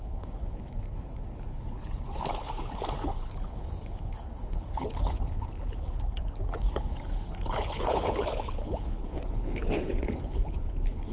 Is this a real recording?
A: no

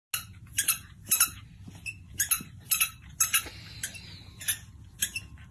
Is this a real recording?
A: yes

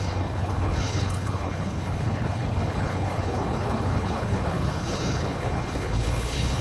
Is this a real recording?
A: no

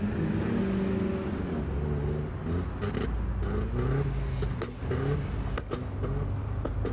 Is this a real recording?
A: yes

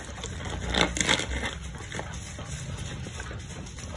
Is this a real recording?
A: yes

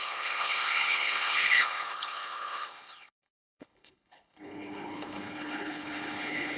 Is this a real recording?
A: no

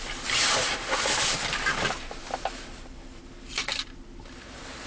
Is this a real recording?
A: yes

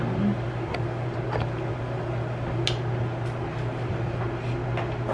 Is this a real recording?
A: yes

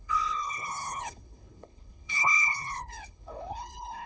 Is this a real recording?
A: no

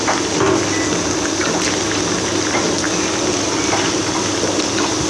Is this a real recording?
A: yes